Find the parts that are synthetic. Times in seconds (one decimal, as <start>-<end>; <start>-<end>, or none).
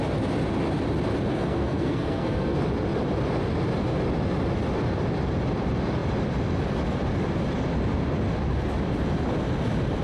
1.3-2.6